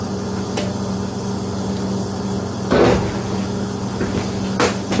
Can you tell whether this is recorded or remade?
recorded